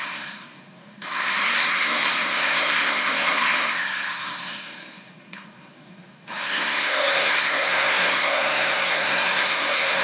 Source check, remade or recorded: remade